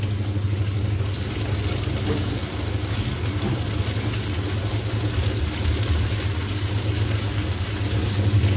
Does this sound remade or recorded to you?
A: recorded